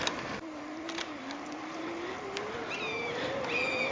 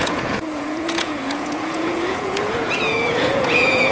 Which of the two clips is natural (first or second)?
first